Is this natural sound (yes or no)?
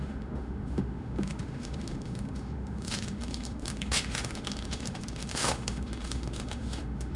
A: no